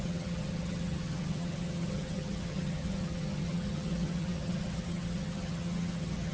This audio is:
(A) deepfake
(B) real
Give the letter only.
A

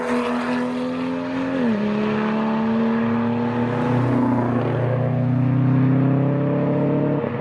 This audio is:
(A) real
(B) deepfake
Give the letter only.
A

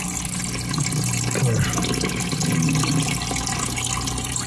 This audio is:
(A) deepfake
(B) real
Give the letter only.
B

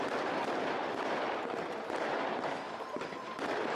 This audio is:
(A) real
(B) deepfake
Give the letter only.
A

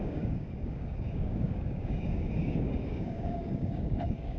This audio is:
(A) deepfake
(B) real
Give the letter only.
A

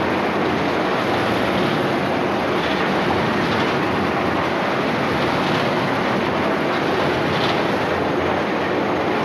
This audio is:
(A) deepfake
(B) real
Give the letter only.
B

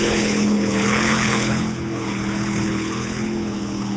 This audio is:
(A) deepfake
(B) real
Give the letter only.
A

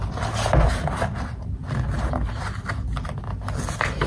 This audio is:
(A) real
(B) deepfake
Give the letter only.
A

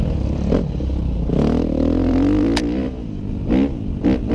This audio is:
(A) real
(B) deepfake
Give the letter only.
A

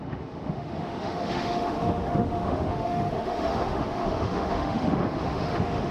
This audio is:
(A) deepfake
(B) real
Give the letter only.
A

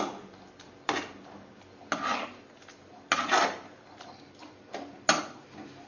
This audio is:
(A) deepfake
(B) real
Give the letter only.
B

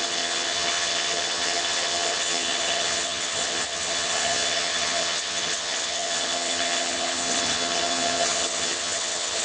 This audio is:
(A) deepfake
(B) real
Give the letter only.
A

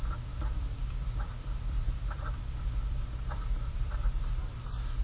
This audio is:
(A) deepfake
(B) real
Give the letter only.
A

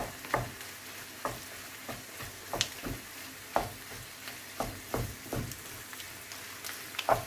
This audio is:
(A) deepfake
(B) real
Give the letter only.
B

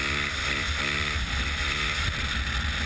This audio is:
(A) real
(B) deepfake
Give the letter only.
A